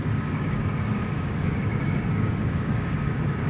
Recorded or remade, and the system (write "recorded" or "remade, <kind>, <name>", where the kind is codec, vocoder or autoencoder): remade, codec, DAC